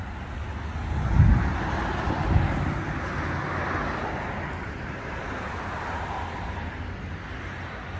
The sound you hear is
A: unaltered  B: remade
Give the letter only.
A